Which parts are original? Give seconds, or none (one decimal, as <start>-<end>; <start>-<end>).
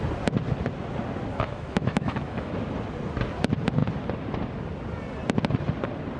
0.0-1.3; 2.5-6.2